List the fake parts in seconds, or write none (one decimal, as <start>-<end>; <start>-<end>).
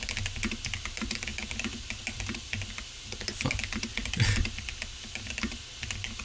none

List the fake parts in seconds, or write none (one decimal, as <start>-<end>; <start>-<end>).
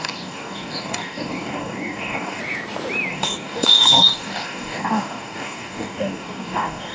0.0-2.4; 3.1-6.9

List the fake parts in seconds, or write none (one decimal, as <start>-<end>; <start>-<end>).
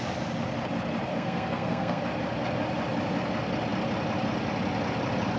1.1-2.0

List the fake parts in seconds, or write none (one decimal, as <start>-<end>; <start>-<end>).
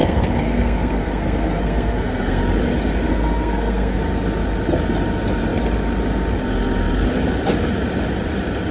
0.0-2.4; 3.1-4.0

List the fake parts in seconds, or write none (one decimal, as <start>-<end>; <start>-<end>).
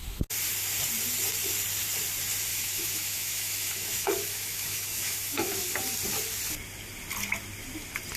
2.5-5.7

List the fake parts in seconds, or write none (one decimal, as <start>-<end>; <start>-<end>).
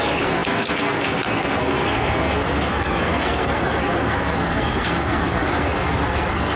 0.0-6.6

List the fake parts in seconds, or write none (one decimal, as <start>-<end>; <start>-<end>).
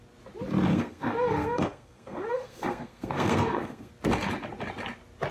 0.7-3.9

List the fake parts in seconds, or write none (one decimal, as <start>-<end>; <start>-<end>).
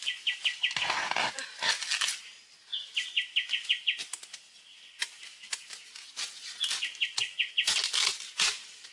none